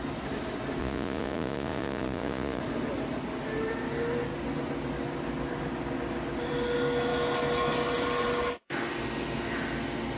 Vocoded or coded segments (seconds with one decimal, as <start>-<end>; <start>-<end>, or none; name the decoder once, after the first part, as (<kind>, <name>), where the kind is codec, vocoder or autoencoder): 0.8-2.6 (vocoder, Vocos)